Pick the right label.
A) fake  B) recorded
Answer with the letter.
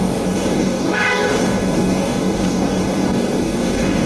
A